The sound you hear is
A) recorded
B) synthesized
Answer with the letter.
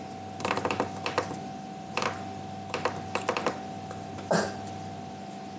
B